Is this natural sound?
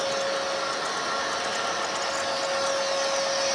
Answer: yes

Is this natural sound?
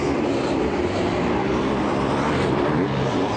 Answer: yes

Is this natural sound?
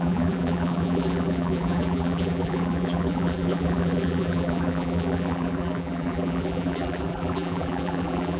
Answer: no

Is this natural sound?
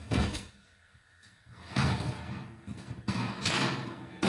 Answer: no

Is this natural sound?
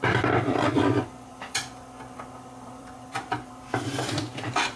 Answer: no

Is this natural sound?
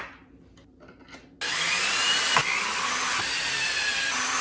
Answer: yes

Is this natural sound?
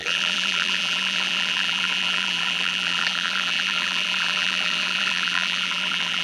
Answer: no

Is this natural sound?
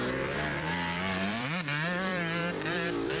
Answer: no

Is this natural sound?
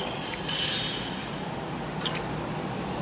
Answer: yes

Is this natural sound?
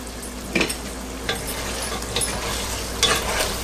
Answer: yes